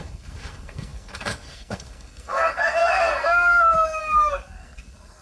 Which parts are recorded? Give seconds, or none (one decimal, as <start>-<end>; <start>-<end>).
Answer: none